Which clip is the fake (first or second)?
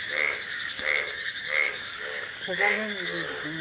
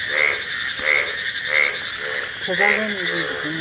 first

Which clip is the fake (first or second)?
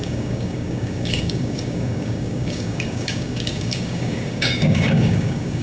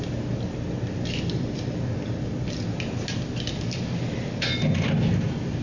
first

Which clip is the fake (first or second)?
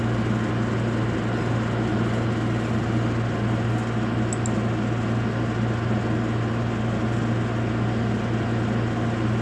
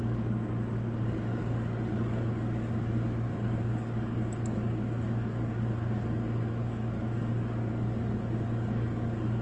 second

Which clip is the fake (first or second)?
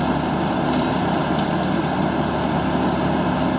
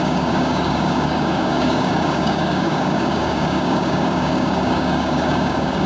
second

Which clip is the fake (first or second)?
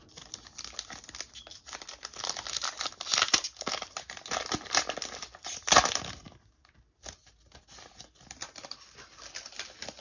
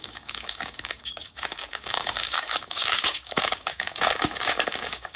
second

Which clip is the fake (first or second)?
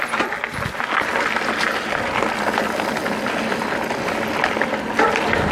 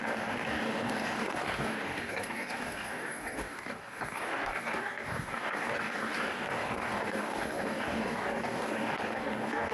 second